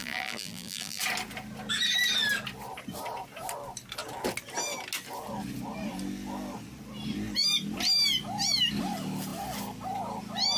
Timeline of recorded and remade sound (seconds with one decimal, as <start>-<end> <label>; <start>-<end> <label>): 0.0-1.0 remade; 1.0-10.6 recorded